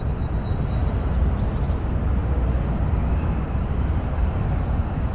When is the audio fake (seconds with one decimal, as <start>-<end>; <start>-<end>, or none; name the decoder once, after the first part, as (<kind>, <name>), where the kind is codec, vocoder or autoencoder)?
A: 2.2-5.1 (codec, DAC)